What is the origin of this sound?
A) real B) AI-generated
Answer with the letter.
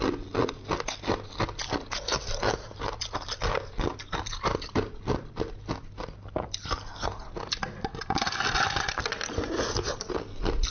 A